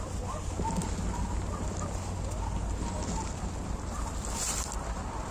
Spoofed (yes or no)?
no